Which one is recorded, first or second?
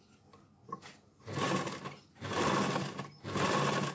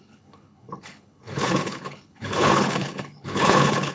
first